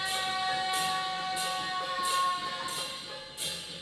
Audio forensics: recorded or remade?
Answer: recorded